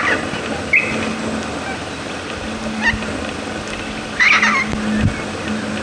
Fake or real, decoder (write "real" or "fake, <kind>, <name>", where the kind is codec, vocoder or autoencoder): real